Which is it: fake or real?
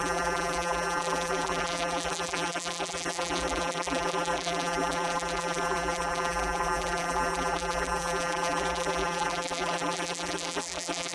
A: fake